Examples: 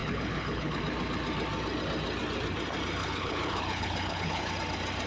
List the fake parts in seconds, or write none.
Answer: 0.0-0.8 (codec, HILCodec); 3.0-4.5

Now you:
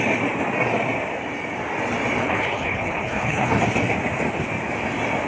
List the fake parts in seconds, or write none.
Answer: 2.2-3.6 (codec, HILCodec)